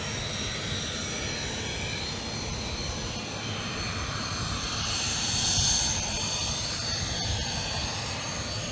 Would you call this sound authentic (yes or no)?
yes